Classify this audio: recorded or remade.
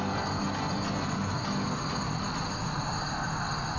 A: recorded